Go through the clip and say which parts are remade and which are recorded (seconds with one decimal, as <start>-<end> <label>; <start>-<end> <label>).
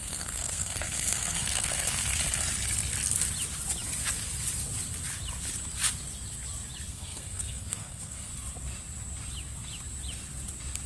0.0-2.2 remade; 2.2-6.9 recorded; 6.9-8.3 remade; 8.3-10.9 recorded